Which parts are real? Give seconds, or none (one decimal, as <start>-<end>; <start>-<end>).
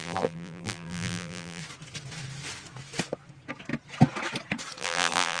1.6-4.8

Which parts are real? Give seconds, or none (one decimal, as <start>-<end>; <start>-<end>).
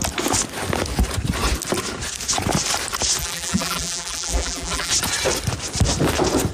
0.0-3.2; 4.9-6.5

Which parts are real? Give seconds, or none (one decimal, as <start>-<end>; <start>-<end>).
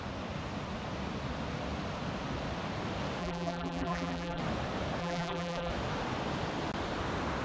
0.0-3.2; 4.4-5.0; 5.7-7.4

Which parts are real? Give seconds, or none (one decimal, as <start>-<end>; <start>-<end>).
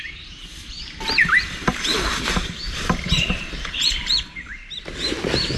4.5-5.6